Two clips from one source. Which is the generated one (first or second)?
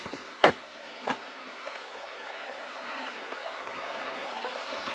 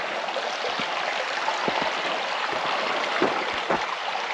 first